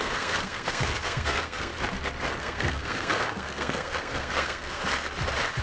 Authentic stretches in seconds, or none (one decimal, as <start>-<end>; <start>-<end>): 1.7-2.4; 4.8-5.6